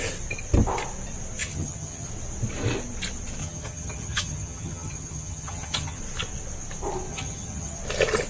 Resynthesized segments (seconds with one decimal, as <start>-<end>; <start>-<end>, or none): 1.4-2.1; 3.4-6.0; 7.1-7.8